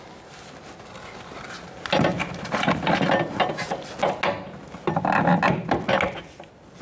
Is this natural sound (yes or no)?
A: yes